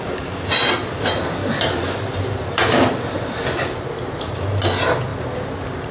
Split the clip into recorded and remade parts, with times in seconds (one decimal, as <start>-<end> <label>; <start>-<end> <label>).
0.0-1.4 recorded; 1.4-3.1 remade; 3.1-5.9 recorded